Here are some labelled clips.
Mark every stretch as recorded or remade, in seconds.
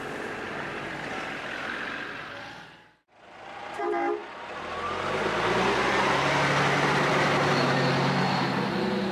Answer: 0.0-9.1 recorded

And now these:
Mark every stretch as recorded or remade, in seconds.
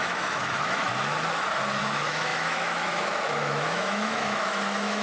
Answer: 0.0-0.9 remade; 0.9-1.8 recorded; 1.8-5.0 remade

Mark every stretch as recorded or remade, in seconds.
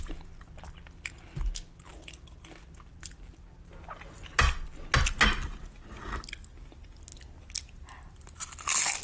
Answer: 0.0-9.0 recorded